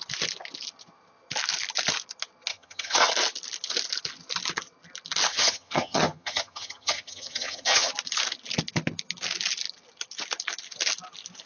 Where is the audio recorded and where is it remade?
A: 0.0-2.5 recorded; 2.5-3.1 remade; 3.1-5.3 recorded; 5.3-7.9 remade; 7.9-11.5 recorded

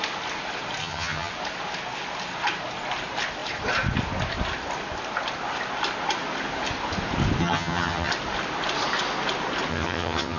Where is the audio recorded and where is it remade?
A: 0.0-0.8 recorded; 0.8-1.3 remade; 1.3-7.4 recorded; 7.4-8.1 remade; 8.1-9.7 recorded; 9.7-10.4 remade

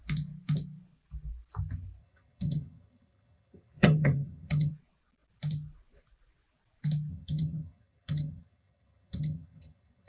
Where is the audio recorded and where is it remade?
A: 0.0-2.0 recorded; 2.0-4.7 remade; 4.7-7.1 recorded; 7.1-10.1 remade

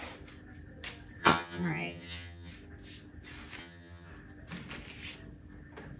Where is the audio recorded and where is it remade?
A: 0.0-1.2 recorded; 1.2-2.5 remade; 2.5-3.6 recorded; 3.6-4.1 remade; 4.1-6.0 recorded

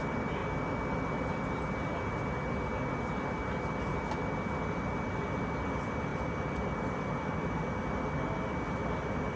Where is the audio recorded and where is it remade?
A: 0.0-9.4 recorded

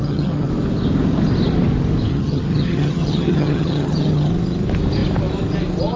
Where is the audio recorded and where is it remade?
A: 0.0-0.5 remade; 0.5-2.1 recorded; 2.1-4.3 remade; 4.3-6.0 recorded

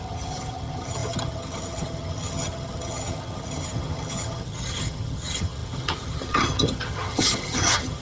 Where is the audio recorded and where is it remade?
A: 0.0-8.0 remade